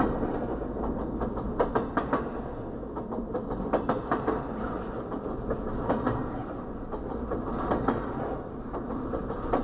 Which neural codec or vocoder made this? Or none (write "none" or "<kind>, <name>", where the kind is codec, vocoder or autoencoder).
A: none